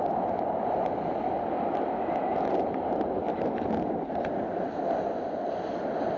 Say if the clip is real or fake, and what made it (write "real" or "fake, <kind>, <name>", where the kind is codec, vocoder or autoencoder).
real